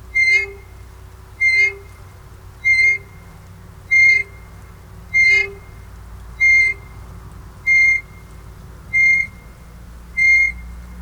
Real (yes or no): yes